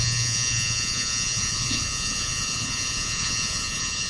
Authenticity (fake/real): fake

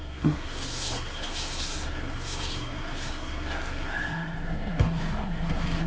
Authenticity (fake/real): fake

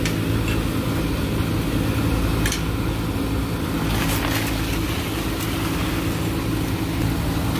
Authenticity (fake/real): real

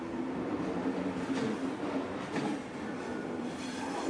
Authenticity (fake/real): real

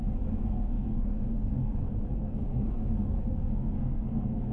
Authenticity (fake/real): fake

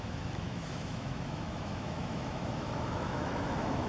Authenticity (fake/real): fake